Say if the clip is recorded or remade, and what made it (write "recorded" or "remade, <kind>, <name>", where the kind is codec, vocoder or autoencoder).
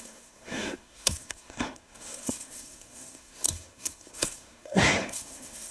remade, codec, SNAC